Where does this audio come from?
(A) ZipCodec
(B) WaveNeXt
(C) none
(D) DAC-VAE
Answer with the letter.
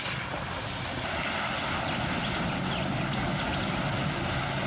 C